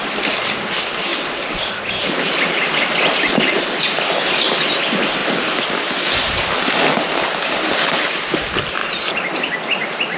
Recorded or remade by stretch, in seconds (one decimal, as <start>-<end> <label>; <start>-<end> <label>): 0.0-10.2 recorded